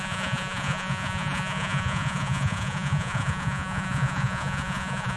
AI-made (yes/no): yes